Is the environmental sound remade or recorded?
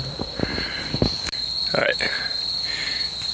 recorded